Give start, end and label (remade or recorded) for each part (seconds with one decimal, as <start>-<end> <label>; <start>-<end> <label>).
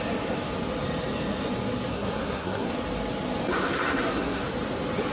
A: 0.0-1.9 recorded; 1.9-2.7 remade; 2.7-3.6 recorded; 3.6-4.4 remade; 4.4-5.1 recorded